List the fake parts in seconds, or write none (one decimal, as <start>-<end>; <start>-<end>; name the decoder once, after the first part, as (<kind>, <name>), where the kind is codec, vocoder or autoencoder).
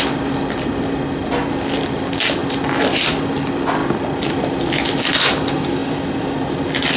none